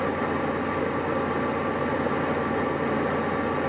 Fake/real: real